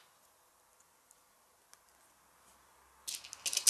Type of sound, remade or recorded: recorded